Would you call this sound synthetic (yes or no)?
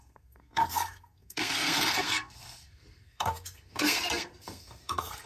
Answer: yes